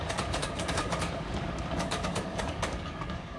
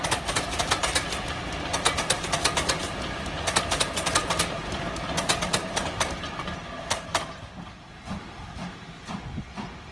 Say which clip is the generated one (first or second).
first